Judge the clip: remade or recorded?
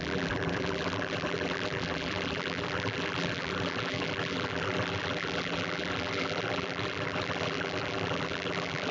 remade